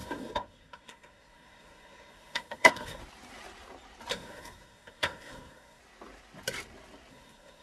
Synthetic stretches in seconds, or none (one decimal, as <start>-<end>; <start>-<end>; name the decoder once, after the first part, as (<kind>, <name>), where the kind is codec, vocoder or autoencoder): 0.0-3.0 (codec, SNAC); 4.1-5.8; 7.1-7.6

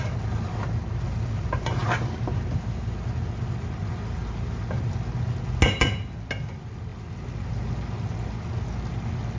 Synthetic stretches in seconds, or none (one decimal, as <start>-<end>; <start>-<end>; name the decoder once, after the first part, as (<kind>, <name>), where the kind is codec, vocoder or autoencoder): none

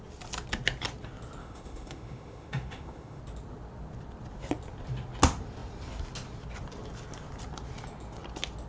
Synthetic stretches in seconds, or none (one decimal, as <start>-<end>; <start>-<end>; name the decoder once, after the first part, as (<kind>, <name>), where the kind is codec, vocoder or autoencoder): 1.4-3.2 (autoencoder, DAC-VAE)

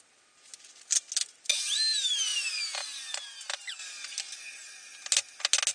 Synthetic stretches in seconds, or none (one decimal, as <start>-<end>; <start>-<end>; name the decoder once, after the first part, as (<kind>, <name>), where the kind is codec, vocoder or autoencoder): none